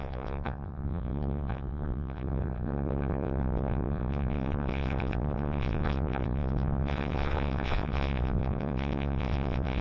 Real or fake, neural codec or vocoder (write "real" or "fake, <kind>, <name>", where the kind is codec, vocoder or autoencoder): fake, vocoder, WaveNeXt